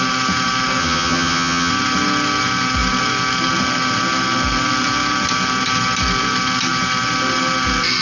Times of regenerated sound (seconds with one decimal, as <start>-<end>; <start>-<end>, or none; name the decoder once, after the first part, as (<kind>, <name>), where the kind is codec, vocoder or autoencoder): 0.8-1.7 (vocoder, HiFi-GAN)